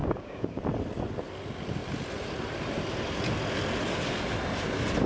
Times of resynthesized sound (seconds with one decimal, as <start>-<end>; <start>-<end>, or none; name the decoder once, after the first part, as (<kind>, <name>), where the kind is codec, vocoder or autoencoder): 0.0-0.6 (codec, DAC)